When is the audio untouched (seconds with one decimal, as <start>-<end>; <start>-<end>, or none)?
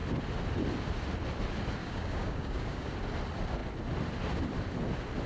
0.0-1.8; 2.9-5.3